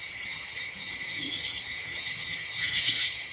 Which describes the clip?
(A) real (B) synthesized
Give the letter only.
B